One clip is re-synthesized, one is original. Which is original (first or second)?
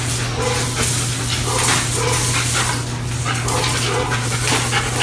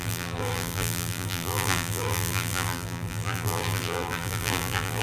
first